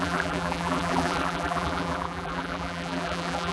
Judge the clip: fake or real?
fake